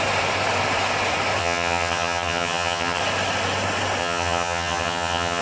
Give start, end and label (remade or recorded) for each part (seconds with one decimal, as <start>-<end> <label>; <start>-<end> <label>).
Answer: 0.0-1.4 recorded; 1.4-3.0 remade; 3.0-4.0 recorded; 4.0-5.4 remade